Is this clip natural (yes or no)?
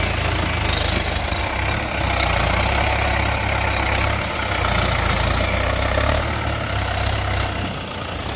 yes